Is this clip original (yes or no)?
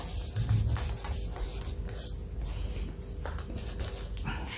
yes